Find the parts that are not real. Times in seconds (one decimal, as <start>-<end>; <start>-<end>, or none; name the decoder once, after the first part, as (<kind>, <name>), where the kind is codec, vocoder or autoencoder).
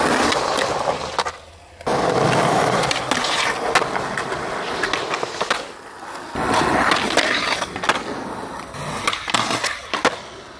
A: none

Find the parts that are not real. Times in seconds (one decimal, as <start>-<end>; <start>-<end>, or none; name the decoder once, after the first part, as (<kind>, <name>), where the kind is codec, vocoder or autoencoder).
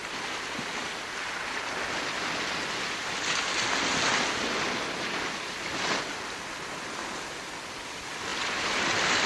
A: none